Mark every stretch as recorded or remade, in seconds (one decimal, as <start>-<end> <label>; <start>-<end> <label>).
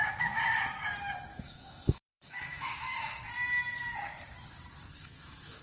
0.0-1.3 recorded; 1.3-3.2 remade; 3.2-5.0 recorded; 5.0-5.6 remade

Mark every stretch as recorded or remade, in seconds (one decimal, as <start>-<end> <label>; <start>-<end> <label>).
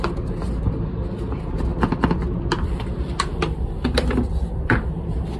0.0-1.7 recorded; 1.7-4.9 remade; 4.9-5.4 recorded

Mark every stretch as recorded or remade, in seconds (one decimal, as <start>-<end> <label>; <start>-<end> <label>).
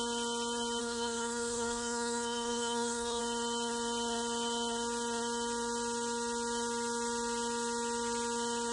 0.0-0.8 recorded; 0.8-3.2 remade; 3.2-8.7 recorded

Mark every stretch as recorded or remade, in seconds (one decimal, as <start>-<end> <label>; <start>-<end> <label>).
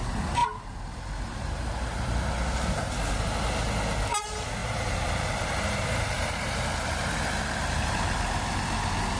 0.0-0.4 recorded; 0.4-2.9 remade; 2.9-4.6 recorded; 4.6-8.6 remade; 8.6-9.2 recorded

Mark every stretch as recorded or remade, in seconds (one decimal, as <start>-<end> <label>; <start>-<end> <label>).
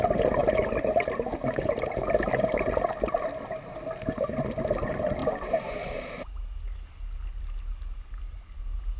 0.0-9.0 recorded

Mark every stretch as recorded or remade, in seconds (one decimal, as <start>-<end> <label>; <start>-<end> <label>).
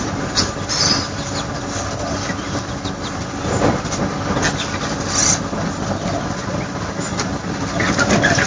0.0-8.5 recorded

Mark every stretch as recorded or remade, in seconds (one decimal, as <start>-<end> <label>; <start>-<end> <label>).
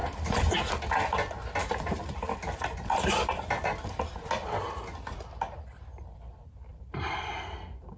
0.0-0.7 remade; 0.7-1.6 recorded; 1.6-4.2 remade; 4.2-6.7 recorded; 6.7-7.3 remade; 7.3-8.0 recorded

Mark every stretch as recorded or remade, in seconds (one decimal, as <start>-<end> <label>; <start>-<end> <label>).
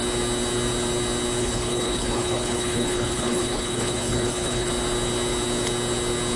0.0-1.4 recorded; 1.4-4.7 remade; 4.7-6.4 recorded